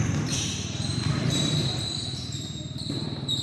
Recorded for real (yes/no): no